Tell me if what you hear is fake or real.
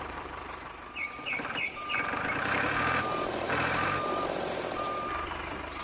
fake